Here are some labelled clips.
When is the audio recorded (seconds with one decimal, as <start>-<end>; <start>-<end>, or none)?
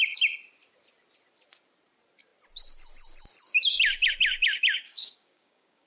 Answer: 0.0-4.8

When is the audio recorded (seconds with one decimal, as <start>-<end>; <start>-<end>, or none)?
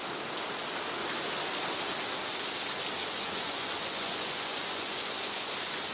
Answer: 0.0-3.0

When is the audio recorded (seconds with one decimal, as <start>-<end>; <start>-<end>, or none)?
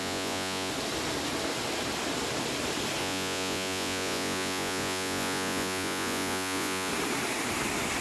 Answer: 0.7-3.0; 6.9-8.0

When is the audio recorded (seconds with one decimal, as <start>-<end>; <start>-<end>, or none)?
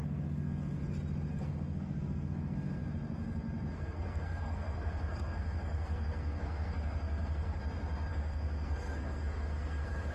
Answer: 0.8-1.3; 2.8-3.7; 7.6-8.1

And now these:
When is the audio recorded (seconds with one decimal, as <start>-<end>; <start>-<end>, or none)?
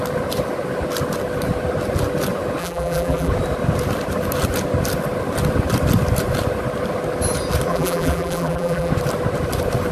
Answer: 0.0-2.6; 3.3-7.7; 8.9-9.9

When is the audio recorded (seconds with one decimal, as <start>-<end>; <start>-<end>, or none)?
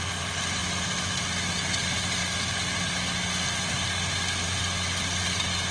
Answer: 0.0-5.7